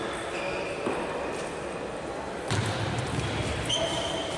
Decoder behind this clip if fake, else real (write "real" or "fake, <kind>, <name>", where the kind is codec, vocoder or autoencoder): real